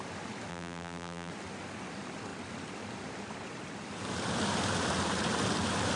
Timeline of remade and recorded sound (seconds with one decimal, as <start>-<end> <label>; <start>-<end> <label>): 0.0-0.5 recorded; 0.5-1.3 remade; 1.3-6.0 recorded